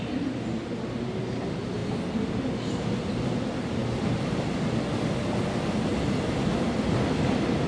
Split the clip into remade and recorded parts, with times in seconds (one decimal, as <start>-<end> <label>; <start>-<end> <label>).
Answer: 0.0-7.7 recorded